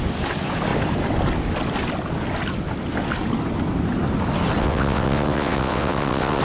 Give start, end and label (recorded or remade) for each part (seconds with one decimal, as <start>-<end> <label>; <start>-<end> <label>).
0.0-4.6 recorded; 4.6-6.4 remade